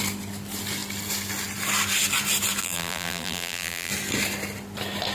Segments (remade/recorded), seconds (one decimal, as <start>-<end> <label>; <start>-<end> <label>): 0.0-2.6 recorded; 2.6-3.9 remade; 3.9-5.1 recorded